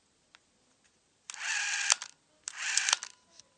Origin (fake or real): real